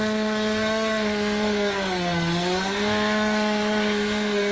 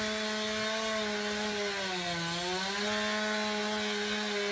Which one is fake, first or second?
first